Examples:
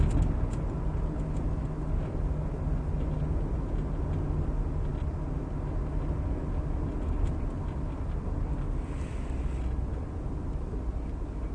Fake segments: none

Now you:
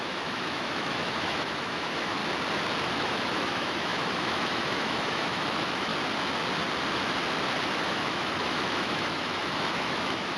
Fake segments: 0.0-2.2 (autoencoder, DAC-VAE); 2.9-5.9; 7.8-10.4

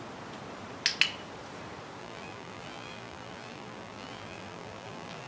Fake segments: 2.0-5.3 (vocoder, BigVGAN v2)

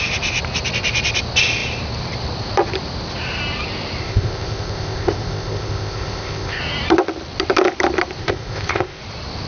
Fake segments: 4.0-6.6 (codec, ZipCodec); 8.2-9.0

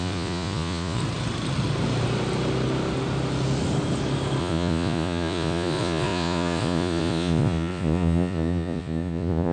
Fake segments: 0.0-1.0 (vocoder, Vocos); 4.4-9.5